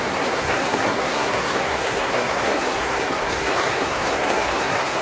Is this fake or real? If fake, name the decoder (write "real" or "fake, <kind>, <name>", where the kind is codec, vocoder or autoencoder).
fake, codec, SNAC